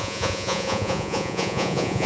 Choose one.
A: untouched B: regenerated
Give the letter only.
B